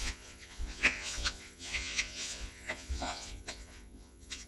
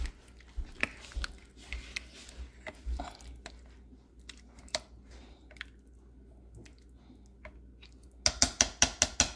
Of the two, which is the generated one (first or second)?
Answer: first